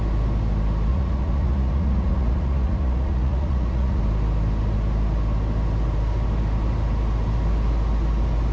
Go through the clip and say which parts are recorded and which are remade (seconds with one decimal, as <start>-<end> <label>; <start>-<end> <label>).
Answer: 0.0-0.9 recorded; 0.9-4.0 remade; 4.0-8.5 recorded